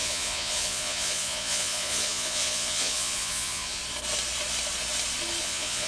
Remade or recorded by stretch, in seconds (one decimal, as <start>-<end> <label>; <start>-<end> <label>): 0.0-3.8 remade; 3.8-5.4 recorded; 5.4-5.9 remade